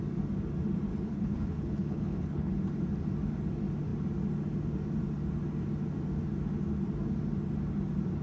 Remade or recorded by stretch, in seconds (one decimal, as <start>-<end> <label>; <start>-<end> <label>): 0.0-0.9 recorded; 0.9-2.5 remade; 2.5-8.2 recorded